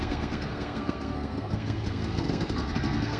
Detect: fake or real fake